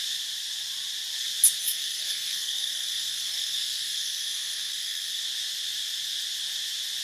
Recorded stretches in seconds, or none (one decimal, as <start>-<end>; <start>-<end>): 0.0-1.6; 5.2-7.0